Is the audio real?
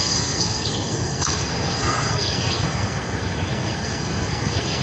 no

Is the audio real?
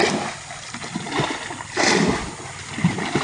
yes